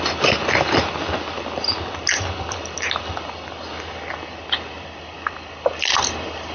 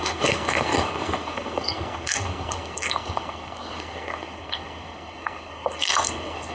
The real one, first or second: first